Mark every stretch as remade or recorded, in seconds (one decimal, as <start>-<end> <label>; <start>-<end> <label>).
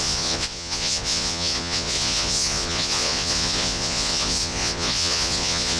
0.0-5.8 remade